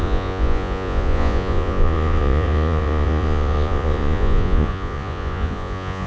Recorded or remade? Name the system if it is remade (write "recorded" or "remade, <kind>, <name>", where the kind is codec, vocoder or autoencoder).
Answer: remade, vocoder, Vocos